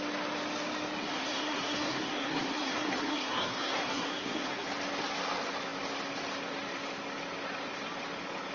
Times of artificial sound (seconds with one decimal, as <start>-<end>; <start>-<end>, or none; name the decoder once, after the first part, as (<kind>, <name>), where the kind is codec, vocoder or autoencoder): 1.0-4.7 (codec, SNAC)